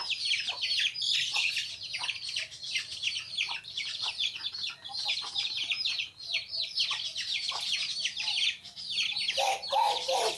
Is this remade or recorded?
recorded